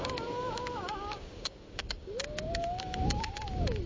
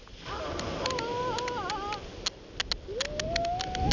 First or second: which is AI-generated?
first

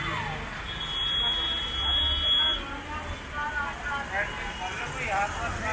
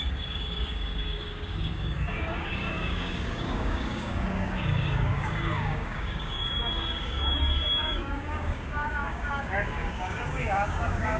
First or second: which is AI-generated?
second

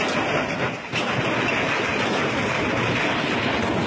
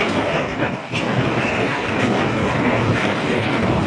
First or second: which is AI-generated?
second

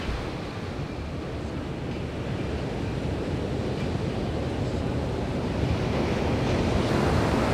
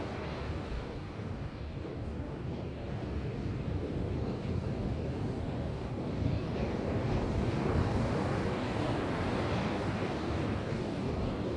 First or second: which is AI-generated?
second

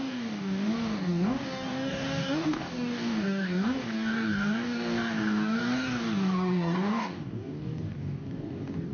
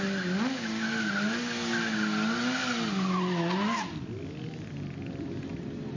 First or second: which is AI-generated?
first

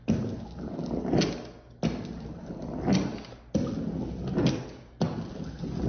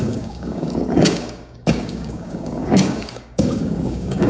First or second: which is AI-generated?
second